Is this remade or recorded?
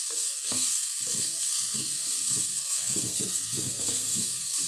remade